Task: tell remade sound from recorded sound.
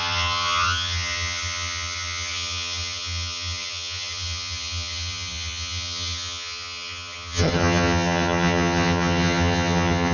remade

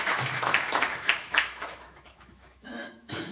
remade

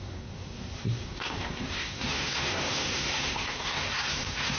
remade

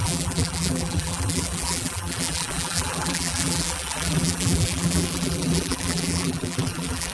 remade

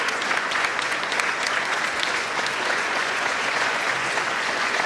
remade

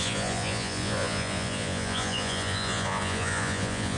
remade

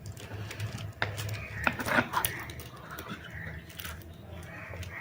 recorded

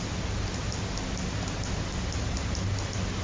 recorded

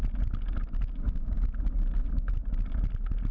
recorded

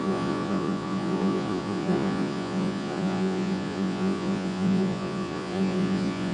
remade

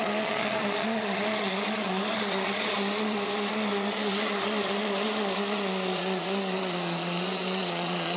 remade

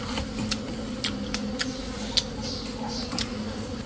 recorded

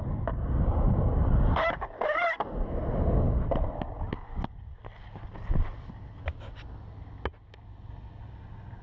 recorded